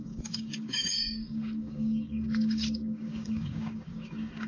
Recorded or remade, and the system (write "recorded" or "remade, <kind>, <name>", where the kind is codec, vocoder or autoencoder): remade, codec, DAC